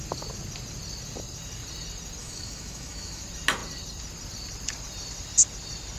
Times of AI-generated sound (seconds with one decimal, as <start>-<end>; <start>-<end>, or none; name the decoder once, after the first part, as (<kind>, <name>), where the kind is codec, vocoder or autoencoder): 2.2-3.2 (autoencoder, DAC-VAE)